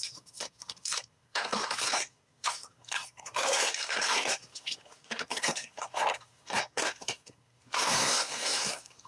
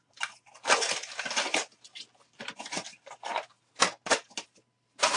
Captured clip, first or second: second